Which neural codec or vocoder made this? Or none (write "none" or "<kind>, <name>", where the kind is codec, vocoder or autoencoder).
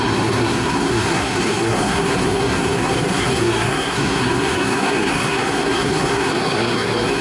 codec, SNAC